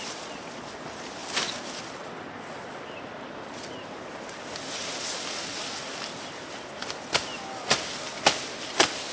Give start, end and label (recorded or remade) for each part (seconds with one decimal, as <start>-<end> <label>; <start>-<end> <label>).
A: 0.0-9.1 recorded